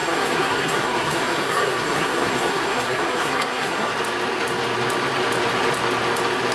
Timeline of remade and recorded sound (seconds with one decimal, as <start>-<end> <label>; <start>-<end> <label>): 0.0-3.9 remade; 3.9-6.5 recorded